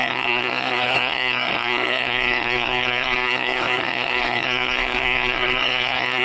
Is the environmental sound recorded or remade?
remade